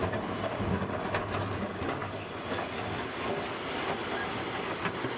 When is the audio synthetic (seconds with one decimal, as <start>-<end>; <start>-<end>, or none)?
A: none